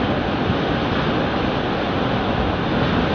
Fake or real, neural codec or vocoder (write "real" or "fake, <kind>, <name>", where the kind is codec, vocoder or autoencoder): real